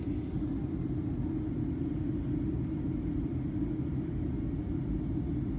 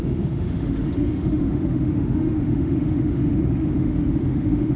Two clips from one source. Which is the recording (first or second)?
first